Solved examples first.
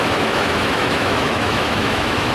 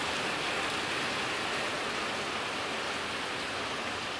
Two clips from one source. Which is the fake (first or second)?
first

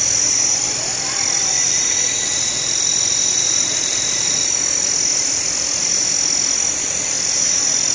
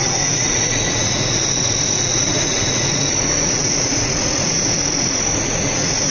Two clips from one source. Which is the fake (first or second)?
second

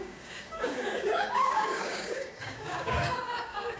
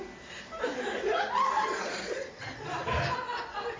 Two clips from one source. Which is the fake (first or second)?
first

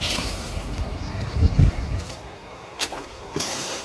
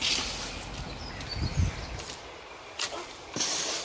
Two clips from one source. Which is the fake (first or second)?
first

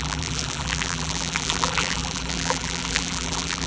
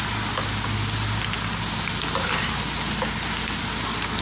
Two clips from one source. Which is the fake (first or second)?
first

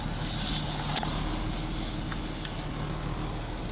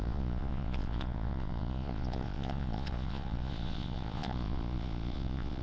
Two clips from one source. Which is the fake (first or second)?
second